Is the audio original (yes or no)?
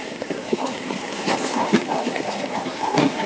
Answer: no